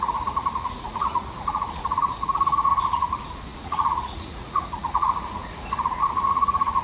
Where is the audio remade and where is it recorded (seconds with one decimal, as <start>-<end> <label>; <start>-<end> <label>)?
0.0-6.8 remade